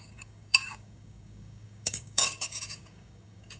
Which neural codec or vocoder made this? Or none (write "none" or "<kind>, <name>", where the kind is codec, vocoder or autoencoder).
codec, DAC